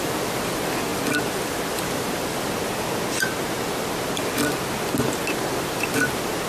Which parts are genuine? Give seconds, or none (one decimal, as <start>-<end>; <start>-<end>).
0.0-6.5